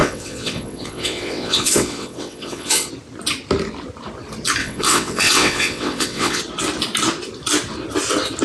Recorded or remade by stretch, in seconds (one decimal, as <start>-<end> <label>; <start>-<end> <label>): 0.0-2.9 remade; 2.9-4.6 recorded; 4.6-6.4 remade; 6.4-8.4 recorded